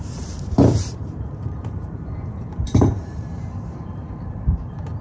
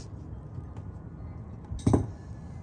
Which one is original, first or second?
second